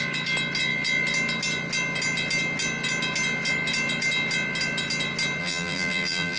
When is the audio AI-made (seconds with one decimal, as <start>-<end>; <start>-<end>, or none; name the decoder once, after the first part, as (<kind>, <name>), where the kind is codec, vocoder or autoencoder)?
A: 5.4-6.4 (vocoder, BigVGAN v2)